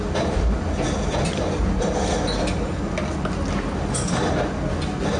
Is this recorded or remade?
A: recorded